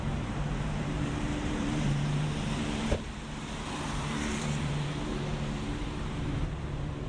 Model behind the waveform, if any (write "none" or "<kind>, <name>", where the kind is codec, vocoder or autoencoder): vocoder, BigVGAN v2